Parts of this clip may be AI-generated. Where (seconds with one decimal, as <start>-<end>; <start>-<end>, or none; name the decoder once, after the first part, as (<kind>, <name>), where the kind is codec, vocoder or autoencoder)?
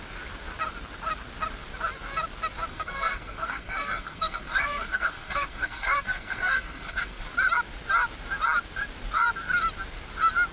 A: 2.7-7.2 (codec, SNAC)